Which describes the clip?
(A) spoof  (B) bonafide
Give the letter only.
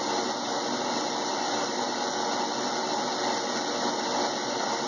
B